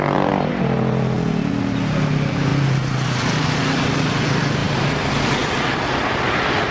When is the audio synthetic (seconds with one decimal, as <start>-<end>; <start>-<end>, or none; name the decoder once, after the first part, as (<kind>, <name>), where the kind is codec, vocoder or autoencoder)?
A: 4.6-5.1 (vocoder, BigVGAN v2)